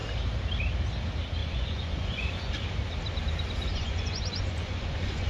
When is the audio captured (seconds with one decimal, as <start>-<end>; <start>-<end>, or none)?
0.0-1.4; 2.5-3.7